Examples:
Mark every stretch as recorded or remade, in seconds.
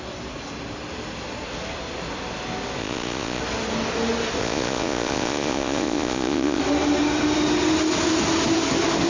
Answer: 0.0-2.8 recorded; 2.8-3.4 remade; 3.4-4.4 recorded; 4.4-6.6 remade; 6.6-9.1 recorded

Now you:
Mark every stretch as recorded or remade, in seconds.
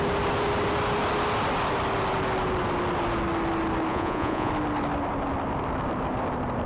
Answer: 0.0-3.9 recorded; 3.9-4.5 remade; 4.5-6.7 recorded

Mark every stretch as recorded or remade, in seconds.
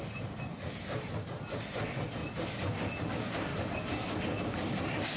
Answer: 0.0-5.2 recorded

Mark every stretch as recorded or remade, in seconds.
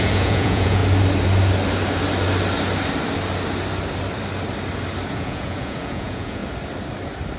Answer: 0.0-0.8 remade; 0.8-5.1 recorded; 5.1-6.4 remade; 6.4-7.4 recorded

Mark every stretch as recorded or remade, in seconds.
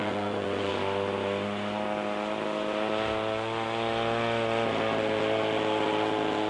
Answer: 0.0-0.7 remade; 0.7-6.5 recorded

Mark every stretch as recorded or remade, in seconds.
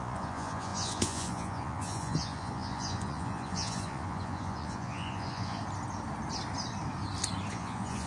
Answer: 0.0-5.6 remade; 5.6-7.5 recorded; 7.5-8.1 remade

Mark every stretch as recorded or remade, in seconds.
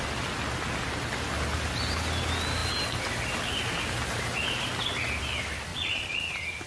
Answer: 0.0-5.7 recorded; 5.7-6.2 remade; 6.2-6.7 recorded